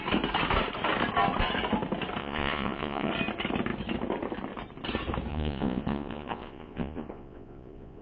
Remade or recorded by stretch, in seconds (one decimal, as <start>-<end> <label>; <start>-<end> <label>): 0.0-2.2 recorded; 2.2-3.1 remade; 3.1-5.3 recorded; 5.3-8.0 remade